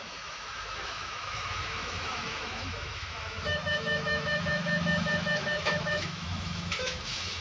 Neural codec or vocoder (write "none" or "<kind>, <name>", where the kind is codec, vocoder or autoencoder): autoencoder, DAC-VAE